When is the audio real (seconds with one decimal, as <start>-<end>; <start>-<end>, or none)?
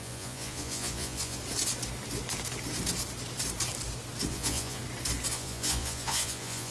1.4-4.3; 4.8-5.3